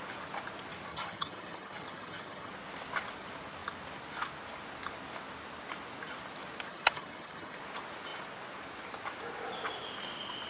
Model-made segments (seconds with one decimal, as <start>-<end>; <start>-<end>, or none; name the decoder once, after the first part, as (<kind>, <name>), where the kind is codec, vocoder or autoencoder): 0.9-2.5 (vocoder, HiFi-GAN); 6.7-7.6